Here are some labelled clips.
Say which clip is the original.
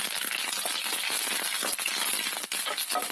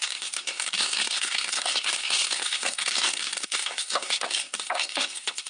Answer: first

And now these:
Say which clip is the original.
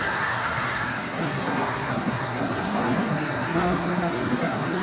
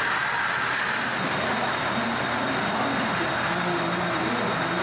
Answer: second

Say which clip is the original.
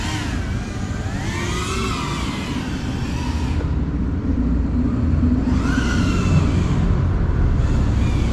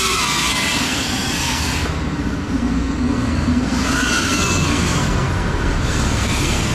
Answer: first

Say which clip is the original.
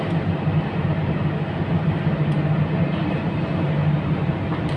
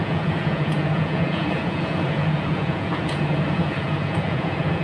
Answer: first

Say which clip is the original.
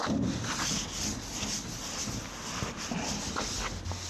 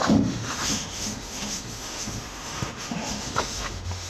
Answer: first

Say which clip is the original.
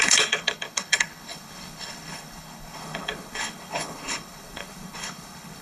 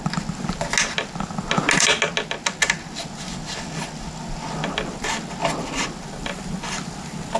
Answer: second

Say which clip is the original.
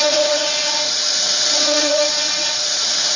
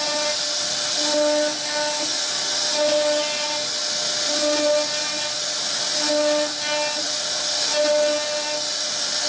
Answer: second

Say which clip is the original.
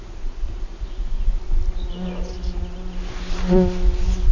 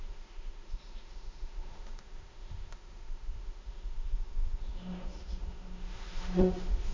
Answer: first